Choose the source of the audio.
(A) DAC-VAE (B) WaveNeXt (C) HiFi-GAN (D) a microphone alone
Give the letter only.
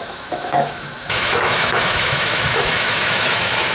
A